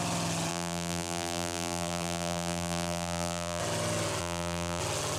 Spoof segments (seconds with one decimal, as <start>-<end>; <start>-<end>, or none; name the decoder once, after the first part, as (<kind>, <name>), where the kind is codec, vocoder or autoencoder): 0.5-3.6 (vocoder, BigVGAN v2); 4.2-4.8